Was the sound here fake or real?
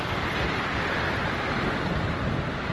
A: real